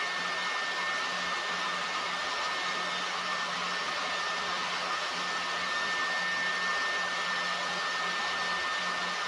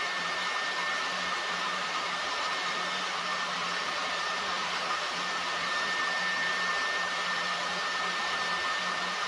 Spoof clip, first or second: second